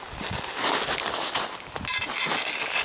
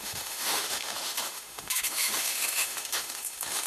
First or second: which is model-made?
second